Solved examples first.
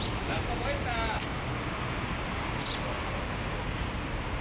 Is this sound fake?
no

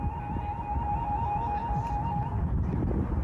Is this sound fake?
no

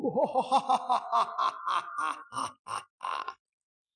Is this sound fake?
no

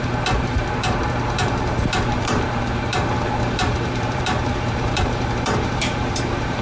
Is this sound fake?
yes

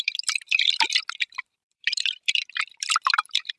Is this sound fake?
yes